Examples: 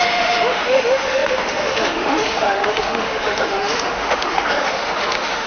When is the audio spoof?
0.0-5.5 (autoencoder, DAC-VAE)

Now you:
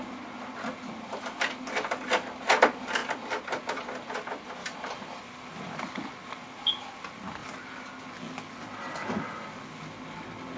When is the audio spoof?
4.6-6.7 (vocoder, BigVGAN v2)

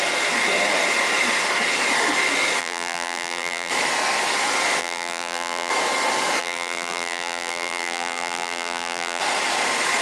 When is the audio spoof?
2.6-3.7 (vocoder, BigVGAN v2); 4.8-5.7; 6.4-9.2

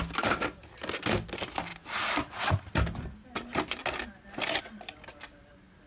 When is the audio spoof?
none

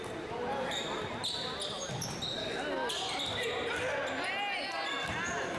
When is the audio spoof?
none

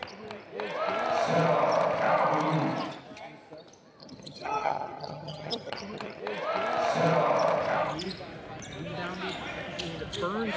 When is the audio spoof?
4.0-6.2 (vocoder, HiFi-GAN)

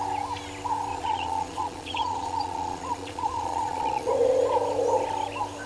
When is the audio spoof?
0.9-4.1 (vocoder, Vocos)

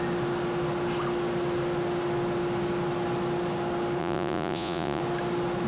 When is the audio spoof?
4.0-5.0 (vocoder, Vocos)